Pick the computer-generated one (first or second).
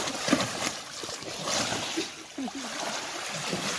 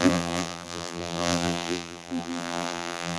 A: second